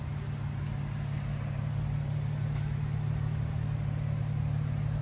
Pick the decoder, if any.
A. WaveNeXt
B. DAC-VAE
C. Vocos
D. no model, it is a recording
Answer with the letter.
D